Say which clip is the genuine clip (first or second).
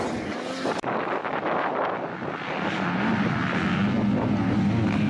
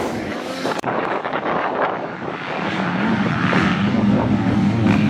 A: first